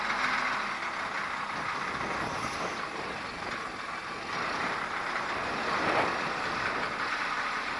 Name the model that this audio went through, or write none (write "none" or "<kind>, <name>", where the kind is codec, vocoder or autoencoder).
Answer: none